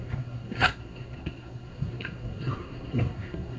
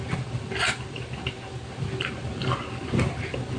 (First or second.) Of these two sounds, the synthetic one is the first